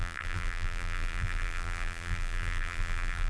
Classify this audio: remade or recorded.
remade